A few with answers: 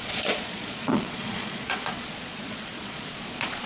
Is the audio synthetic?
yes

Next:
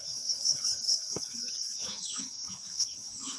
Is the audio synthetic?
yes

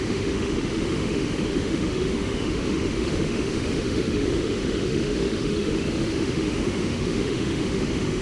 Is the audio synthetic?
yes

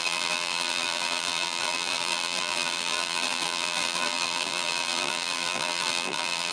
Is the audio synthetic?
yes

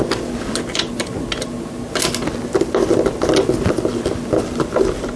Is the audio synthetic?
no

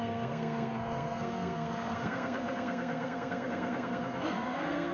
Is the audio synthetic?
yes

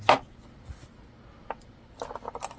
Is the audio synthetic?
no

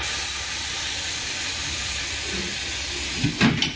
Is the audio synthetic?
no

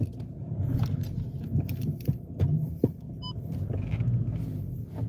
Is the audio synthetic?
no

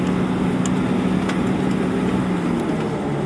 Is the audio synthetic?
no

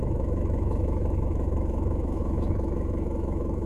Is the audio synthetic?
yes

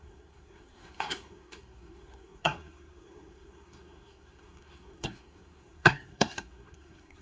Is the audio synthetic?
yes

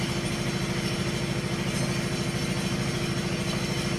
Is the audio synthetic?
no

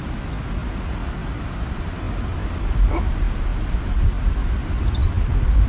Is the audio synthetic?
no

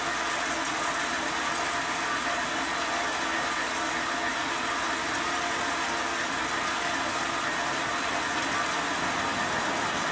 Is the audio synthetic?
no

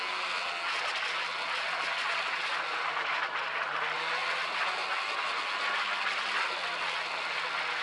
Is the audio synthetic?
no